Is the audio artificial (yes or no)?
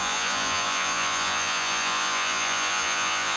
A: yes